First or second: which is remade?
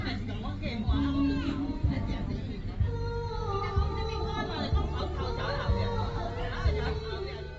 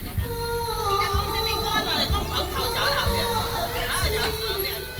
second